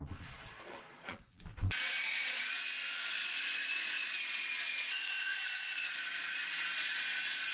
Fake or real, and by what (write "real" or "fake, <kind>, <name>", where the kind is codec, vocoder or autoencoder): fake, vocoder, Vocos